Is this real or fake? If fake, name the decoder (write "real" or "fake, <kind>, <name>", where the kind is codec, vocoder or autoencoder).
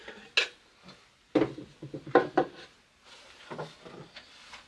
real